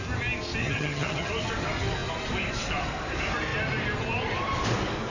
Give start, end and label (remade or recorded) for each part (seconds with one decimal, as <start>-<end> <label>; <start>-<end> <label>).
0.0-0.6 recorded; 0.6-1.3 remade; 1.3-5.1 recorded